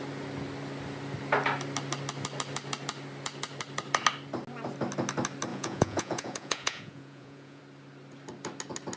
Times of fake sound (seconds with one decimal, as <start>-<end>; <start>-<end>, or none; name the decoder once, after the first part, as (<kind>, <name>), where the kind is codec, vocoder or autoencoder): 5.5-7.6 (vocoder, Vocos)

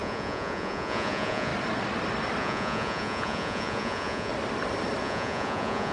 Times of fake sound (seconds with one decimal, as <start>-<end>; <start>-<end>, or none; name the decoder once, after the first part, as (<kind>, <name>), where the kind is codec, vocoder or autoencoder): 0.0-1.5 (vocoder, Vocos); 2.4-4.3; 5.0-5.9

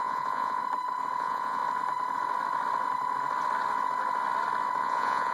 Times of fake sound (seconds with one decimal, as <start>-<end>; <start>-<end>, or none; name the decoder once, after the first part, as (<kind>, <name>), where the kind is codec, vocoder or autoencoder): 0.0-0.6 (vocoder, Vocos); 1.2-1.6; 4.8-5.3

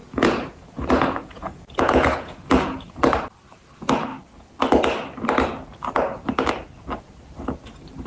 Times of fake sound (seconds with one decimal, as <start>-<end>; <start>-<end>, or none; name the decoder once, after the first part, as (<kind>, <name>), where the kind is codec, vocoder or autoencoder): 0.0-3.0 (vocoder, Vocos)

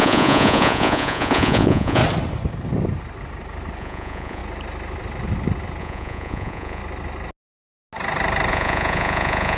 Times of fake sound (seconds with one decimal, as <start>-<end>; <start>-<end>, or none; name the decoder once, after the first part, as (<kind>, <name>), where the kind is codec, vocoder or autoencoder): 0.0-2.0 (vocoder, Vocos); 3.8-4.4; 5.8-6.8; 8.5-9.6